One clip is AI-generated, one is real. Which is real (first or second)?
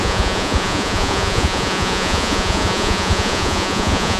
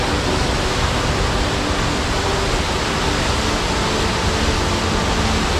second